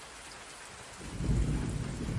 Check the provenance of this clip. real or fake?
real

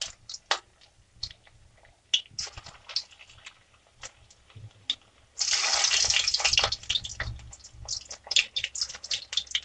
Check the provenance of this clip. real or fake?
real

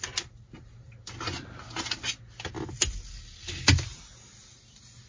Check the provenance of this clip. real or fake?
real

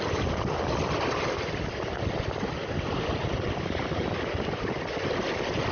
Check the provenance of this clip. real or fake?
real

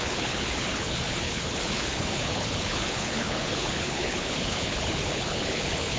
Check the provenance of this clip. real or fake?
fake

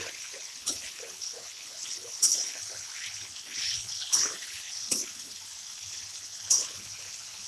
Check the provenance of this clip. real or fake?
fake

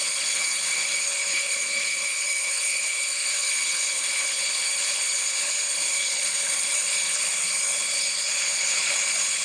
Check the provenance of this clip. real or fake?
fake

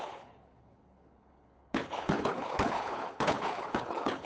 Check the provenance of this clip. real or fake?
fake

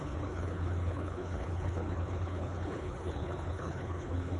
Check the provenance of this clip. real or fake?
fake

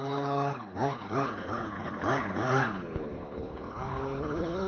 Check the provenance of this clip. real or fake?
fake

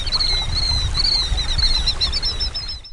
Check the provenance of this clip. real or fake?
real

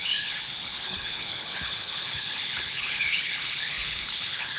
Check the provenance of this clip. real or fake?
fake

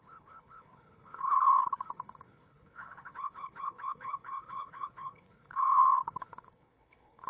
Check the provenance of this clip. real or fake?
fake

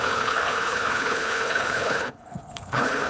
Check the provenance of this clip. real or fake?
fake